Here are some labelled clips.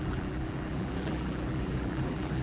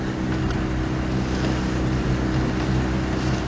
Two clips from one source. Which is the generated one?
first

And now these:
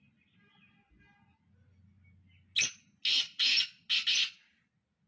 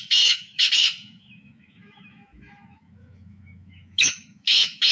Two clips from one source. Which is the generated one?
second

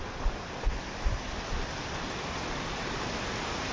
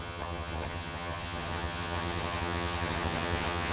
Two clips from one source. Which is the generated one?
second